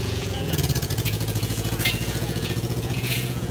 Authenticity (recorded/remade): remade